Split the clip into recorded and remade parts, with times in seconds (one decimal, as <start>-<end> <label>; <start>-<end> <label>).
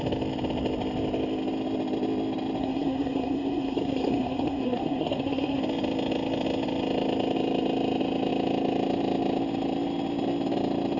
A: 0.0-2.6 recorded; 2.6-5.6 remade; 5.6-11.0 recorded